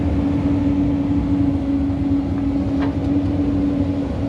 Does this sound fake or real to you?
real